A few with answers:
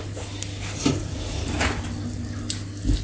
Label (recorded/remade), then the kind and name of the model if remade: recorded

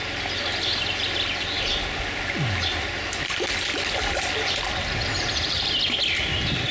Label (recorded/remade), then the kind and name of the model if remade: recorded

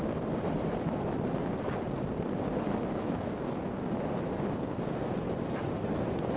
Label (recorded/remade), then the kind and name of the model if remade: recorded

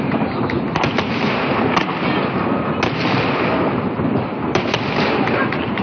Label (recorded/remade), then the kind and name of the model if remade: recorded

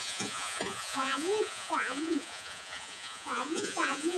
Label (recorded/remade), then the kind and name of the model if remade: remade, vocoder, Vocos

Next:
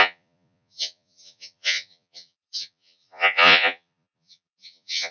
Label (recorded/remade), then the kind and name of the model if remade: remade, vocoder, Vocos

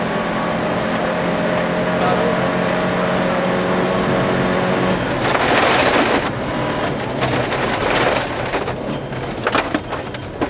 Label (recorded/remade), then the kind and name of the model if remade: recorded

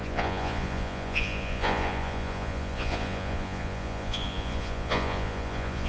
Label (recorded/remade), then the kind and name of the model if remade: remade, vocoder, Vocos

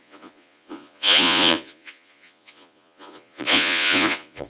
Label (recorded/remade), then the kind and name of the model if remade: remade, vocoder, Vocos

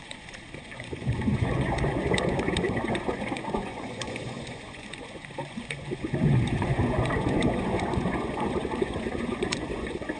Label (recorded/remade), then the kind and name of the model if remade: remade, vocoder, Vocos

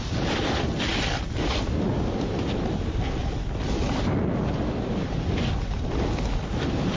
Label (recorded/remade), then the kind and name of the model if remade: recorded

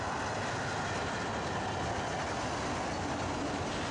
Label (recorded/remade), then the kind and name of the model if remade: recorded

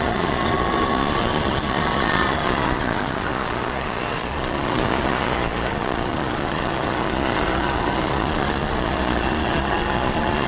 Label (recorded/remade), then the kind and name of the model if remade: remade, vocoder, Vocos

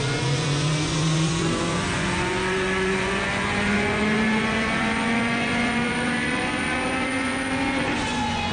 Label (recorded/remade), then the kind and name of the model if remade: remade, vocoder, Vocos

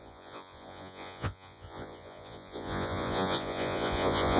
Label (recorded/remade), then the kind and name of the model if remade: remade, vocoder, Vocos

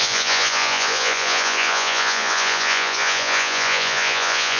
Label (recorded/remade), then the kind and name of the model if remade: remade, vocoder, Vocos